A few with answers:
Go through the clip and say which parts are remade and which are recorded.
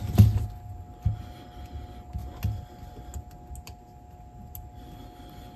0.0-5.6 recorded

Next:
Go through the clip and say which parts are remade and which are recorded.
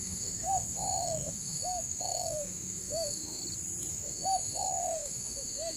0.0-3.4 remade; 3.4-3.9 recorded; 3.9-5.8 remade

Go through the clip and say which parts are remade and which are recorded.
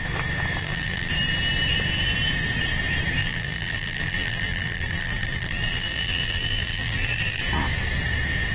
0.0-0.6 recorded; 0.6-1.1 remade; 1.1-3.2 recorded; 3.2-7.4 remade; 7.4-8.5 recorded